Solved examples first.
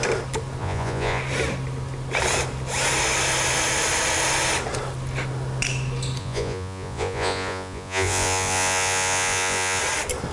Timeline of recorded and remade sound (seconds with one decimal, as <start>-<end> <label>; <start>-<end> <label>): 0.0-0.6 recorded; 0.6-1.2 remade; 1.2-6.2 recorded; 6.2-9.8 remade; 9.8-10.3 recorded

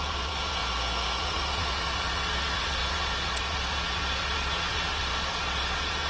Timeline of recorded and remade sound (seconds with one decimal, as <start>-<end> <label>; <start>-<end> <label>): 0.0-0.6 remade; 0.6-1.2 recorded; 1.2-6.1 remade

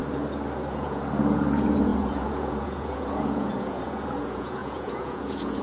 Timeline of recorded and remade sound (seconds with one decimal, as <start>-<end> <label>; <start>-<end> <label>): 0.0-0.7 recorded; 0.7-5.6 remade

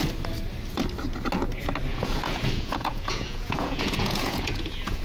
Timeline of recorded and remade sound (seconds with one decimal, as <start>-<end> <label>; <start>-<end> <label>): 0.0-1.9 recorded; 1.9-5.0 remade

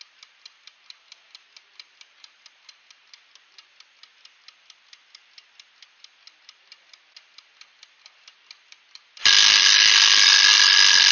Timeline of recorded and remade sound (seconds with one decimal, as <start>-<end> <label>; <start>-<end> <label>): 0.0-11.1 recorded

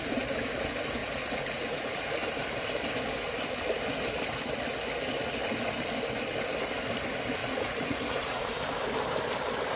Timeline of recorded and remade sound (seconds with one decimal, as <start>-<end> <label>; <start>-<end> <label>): 0.0-1.0 recorded; 1.0-2.0 remade; 2.0-7.4 recorded; 7.4-8.6 remade; 8.6-9.8 recorded

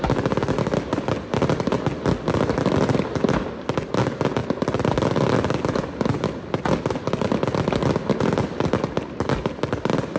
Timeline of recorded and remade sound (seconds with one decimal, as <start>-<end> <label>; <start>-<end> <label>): 0.0-10.2 recorded

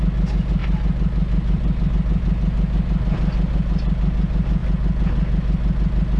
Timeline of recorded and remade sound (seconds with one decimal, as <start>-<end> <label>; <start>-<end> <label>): 0.0-6.2 recorded